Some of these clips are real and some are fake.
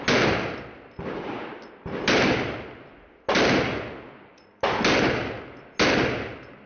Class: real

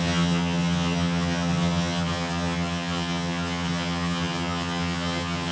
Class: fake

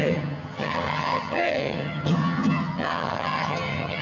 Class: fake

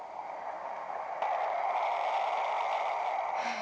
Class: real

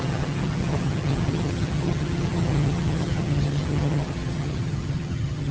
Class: fake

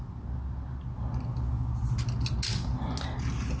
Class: real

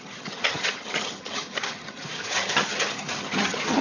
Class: fake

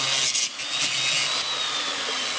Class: real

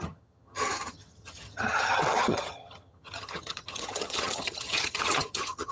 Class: fake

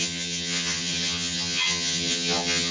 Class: fake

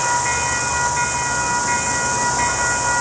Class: real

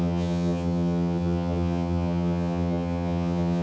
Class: fake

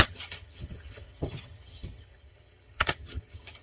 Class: fake